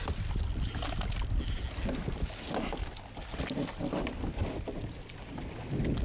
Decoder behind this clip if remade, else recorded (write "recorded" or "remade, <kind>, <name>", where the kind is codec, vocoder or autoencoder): recorded